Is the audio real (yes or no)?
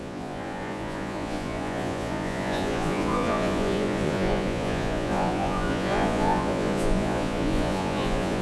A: no